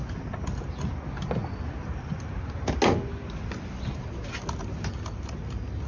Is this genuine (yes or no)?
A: yes